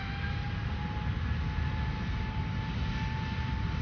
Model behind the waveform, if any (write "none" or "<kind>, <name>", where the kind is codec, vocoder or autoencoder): none